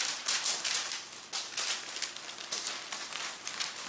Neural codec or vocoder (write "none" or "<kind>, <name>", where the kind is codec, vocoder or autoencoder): none